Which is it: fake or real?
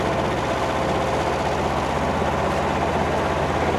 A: real